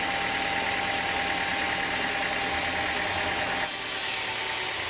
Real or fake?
real